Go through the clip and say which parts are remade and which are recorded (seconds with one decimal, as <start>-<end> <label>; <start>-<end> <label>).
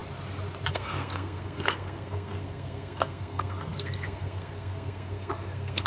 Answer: 0.0-0.7 recorded; 0.7-5.9 remade